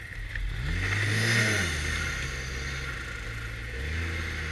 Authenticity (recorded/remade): recorded